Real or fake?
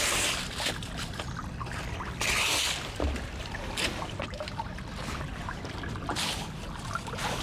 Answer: real